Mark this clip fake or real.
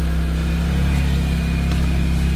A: real